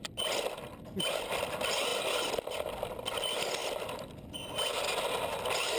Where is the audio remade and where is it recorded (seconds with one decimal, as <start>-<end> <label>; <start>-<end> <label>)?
0.0-5.8 recorded